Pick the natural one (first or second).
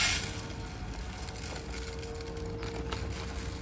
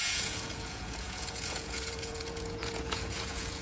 first